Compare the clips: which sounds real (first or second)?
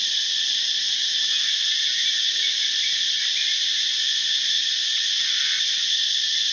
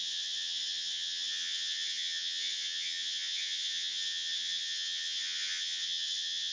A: first